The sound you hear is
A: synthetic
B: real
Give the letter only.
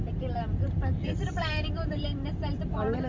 A